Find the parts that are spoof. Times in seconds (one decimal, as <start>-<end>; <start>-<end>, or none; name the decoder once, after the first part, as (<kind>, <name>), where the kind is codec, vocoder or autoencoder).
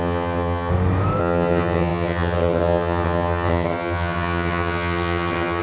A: 0.0-0.7 (vocoder, HiFi-GAN); 1.2-5.6